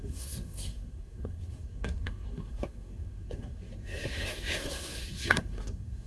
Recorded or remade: remade